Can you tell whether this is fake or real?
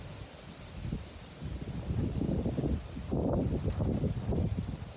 real